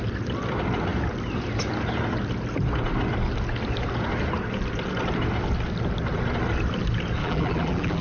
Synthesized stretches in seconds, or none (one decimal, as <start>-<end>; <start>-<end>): 7.2-8.0

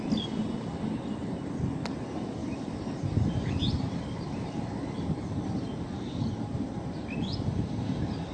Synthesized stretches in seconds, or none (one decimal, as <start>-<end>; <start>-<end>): 2.4-6.6

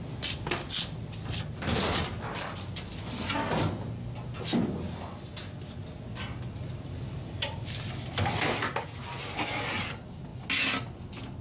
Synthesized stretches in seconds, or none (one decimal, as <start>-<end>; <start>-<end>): none

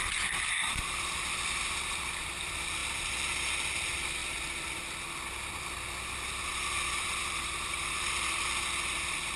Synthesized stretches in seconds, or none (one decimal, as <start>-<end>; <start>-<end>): 0.0-4.2; 6.1-9.4

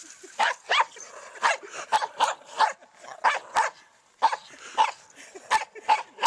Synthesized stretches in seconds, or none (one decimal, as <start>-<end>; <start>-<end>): 1.9-2.5

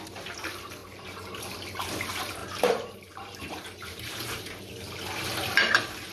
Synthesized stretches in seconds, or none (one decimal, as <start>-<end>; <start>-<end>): 0.8-1.4; 2.4-4.7; 5.4-6.1